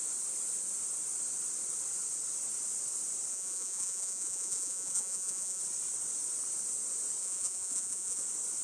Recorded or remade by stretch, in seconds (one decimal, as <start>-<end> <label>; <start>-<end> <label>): 0.0-3.3 recorded; 3.3-5.6 remade; 5.6-7.2 recorded; 7.2-8.2 remade; 8.2-8.6 recorded